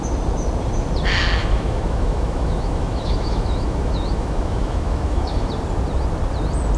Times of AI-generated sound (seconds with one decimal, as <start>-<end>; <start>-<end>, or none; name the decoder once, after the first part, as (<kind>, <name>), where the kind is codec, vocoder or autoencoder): 1.4-5.5 (autoencoder, DAC-VAE)